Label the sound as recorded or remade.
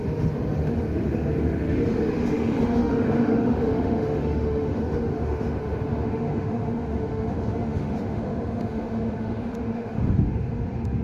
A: remade